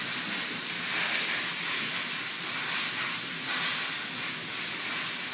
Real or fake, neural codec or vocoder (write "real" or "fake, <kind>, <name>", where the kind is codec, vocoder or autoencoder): real